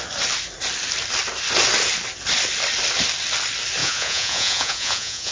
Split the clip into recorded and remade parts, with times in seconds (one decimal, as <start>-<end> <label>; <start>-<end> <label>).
0.0-3.8 recorded; 3.8-5.3 remade